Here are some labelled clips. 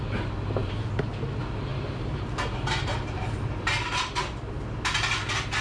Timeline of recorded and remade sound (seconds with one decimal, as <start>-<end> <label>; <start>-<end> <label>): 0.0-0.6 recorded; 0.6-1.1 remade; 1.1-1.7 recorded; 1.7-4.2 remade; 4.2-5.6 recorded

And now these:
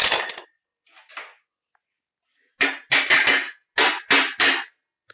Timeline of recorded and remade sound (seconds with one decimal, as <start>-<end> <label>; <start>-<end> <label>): 0.0-5.1 recorded

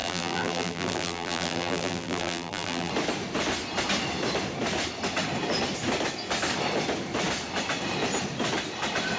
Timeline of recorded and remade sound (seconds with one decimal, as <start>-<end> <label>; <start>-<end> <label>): 0.0-2.9 remade; 2.9-9.2 recorded

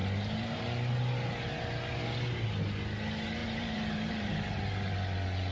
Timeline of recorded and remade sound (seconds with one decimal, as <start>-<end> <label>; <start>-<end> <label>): 0.0-0.6 remade; 0.6-3.4 recorded; 3.4-4.6 remade; 4.6-5.5 recorded

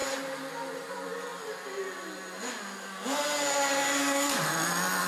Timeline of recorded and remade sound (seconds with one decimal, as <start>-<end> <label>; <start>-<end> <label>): 0.0-0.9 recorded; 0.9-1.3 remade; 1.3-4.4 recorded; 4.4-5.1 remade

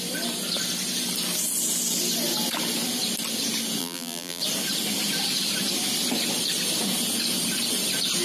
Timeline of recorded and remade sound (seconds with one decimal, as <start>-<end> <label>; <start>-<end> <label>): 0.0-3.8 recorded; 3.8-4.4 remade; 4.4-8.2 recorded

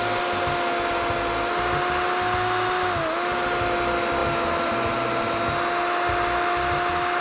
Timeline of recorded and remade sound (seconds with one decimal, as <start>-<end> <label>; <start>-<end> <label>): 0.0-4.2 recorded; 4.2-4.7 remade; 4.7-7.2 recorded

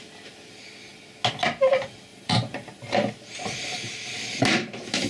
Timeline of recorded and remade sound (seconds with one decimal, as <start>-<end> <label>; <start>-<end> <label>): 0.0-2.1 recorded; 2.1-3.1 remade; 3.1-5.1 recorded